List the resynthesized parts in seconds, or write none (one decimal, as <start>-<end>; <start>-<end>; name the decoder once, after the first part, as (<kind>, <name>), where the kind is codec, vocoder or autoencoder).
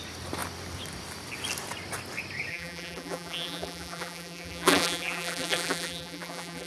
2.5-6.7 (vocoder, BigVGAN v2)